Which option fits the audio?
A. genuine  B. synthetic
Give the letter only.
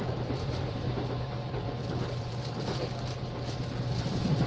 B